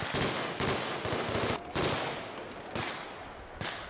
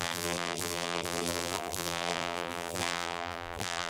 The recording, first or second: first